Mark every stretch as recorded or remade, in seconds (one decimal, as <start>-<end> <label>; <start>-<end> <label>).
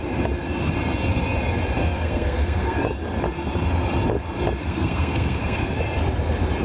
0.0-1.8 recorded; 1.8-2.8 remade; 2.8-4.6 recorded; 4.6-5.8 remade; 5.8-6.6 recorded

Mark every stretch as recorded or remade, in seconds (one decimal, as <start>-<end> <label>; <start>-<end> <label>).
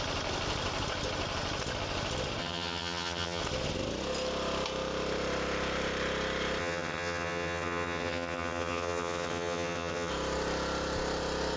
0.0-2.4 recorded; 2.4-3.4 remade; 3.4-6.6 recorded; 6.6-10.1 remade; 10.1-11.6 recorded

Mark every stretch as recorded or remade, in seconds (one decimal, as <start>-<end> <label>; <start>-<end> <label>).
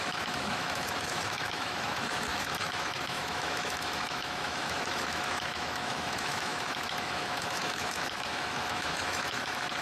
0.0-9.8 remade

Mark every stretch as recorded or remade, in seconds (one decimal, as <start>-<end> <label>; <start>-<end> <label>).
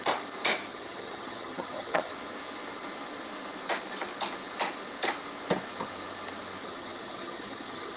0.0-0.7 recorded; 0.7-2.1 remade; 2.1-6.6 recorded; 6.6-8.0 remade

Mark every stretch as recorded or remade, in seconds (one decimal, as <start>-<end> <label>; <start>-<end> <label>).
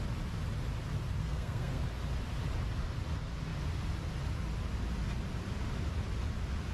0.0-1.2 recorded; 1.2-1.8 remade; 1.8-6.7 recorded